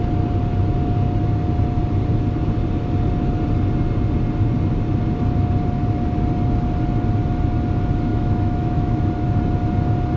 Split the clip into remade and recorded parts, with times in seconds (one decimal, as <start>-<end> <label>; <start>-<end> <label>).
0.0-8.1 recorded; 8.1-9.0 remade; 9.0-10.2 recorded